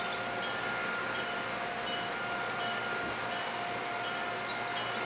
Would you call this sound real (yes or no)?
yes